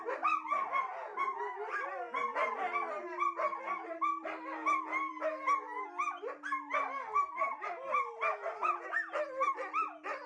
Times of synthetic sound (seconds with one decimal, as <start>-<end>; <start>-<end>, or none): none